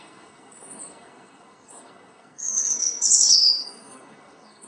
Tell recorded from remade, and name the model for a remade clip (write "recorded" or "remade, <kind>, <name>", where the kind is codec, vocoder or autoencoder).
remade, codec, SNAC